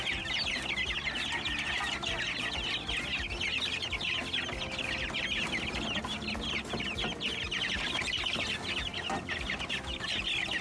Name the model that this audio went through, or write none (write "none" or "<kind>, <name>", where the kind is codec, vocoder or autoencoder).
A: none